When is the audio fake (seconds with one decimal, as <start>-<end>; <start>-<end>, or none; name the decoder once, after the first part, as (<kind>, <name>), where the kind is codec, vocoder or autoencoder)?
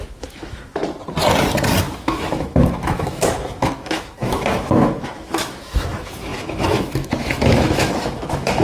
0.0-0.8 (autoencoder, DAC-VAE); 1.8-8.6